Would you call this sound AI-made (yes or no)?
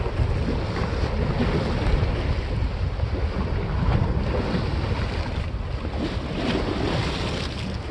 no